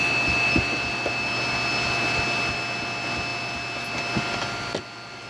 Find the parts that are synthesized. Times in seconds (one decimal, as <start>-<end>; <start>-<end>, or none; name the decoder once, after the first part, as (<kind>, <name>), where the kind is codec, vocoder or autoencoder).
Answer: none